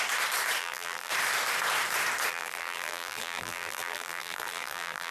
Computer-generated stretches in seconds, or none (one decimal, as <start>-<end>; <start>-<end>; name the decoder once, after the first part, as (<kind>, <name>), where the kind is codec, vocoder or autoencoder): 0.6-1.1 (vocoder, BigVGAN v2); 2.3-5.1

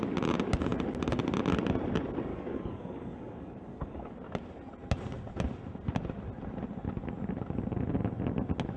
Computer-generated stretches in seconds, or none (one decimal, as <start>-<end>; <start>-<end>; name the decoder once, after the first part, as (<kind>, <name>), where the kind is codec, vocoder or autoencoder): 2.3-4.1 (codec, DAC)

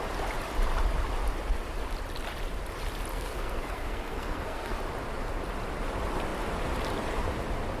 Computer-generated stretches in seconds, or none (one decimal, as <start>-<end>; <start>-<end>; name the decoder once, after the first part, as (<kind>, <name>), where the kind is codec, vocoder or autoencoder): 3.1-4.8 (codec, SNAC)

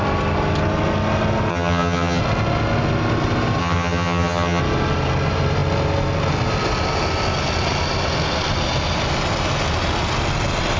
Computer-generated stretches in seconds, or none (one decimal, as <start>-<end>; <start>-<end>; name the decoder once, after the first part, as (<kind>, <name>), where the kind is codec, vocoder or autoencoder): 1.5-2.2 (vocoder, HiFi-GAN); 3.6-4.6

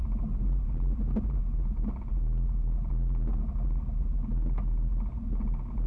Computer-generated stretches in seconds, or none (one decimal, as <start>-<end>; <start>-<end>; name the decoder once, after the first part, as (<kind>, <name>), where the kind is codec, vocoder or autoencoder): 0.0-1.4 (vocoder, BigVGAN v2)

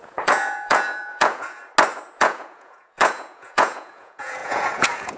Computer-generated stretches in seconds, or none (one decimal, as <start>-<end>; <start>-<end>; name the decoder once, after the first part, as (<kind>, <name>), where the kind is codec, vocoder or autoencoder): 0.0-1.6 (vocoder, Vocos); 2.2-5.2

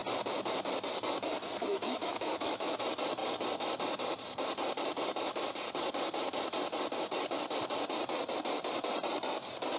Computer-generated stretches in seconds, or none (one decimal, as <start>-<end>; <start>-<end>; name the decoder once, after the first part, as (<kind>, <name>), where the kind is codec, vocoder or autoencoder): 1.7-2.8 (autoencoder, DAC-VAE)